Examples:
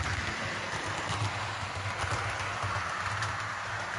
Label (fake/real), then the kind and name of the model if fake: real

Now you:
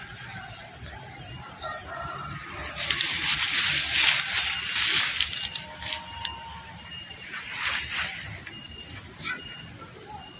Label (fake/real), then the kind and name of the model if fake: real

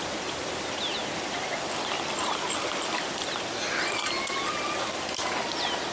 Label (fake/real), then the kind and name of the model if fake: real